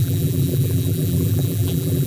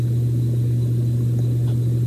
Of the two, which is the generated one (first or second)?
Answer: first